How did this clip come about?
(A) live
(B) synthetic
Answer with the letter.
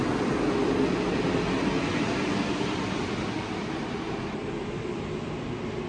A